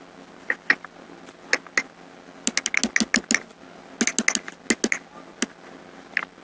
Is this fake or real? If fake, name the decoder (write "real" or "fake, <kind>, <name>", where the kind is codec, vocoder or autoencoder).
real